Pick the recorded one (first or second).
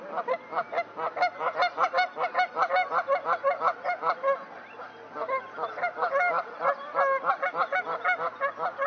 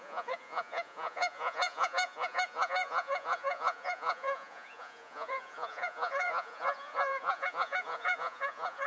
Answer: first